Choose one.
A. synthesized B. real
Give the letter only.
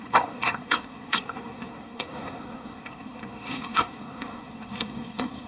A